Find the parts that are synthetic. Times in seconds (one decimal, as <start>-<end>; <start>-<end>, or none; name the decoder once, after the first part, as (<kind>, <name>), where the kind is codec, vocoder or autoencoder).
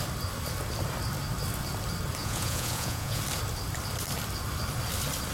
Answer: 2.2-3.2 (vocoder, Vocos)